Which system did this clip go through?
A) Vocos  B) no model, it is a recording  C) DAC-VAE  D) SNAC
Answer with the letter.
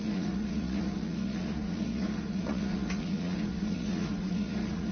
A